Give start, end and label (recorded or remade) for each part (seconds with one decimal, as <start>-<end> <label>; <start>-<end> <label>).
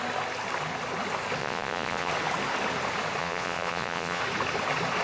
0.0-1.4 recorded; 1.4-2.1 remade; 2.1-3.2 recorded; 3.2-4.2 remade; 4.2-5.0 recorded